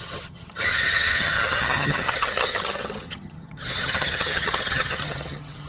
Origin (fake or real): fake